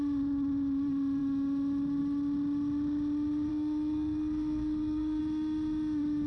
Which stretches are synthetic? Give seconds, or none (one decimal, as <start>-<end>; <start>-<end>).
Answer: 3.5-5.2